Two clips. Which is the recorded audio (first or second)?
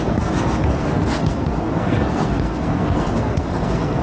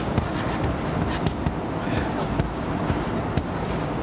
second